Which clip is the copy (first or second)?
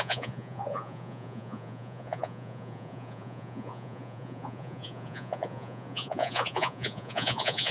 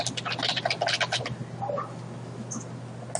first